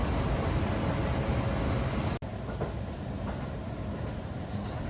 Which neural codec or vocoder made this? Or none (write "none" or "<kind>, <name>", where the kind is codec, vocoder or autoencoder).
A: none